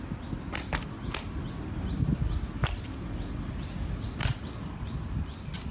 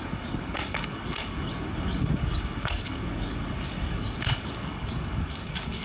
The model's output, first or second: second